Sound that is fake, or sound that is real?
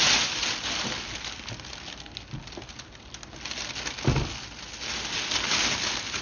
real